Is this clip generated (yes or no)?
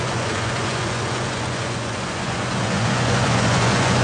yes